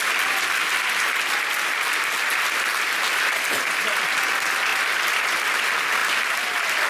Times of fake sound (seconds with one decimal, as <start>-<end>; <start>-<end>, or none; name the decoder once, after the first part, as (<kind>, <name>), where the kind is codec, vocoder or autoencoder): none